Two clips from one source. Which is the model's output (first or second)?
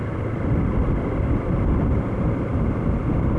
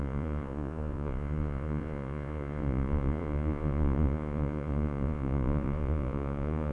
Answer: second